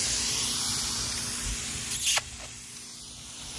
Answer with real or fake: real